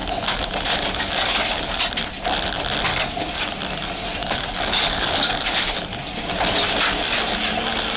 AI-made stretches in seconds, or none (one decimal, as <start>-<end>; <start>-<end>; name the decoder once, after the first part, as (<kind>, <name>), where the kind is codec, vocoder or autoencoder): 0.0-1.8 (codec, DAC); 2.9-3.4; 4.2-6.0